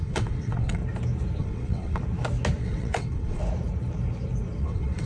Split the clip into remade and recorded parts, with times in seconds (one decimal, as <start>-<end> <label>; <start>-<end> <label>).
0.0-0.8 remade; 0.8-1.4 recorded; 1.4-2.0 remade; 2.0-2.6 recorded; 2.6-3.4 remade; 3.4-4.6 recorded; 4.6-5.1 remade